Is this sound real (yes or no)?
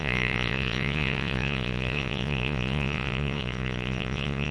no